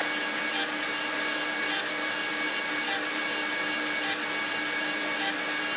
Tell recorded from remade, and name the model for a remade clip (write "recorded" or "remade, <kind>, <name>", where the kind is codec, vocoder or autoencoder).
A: recorded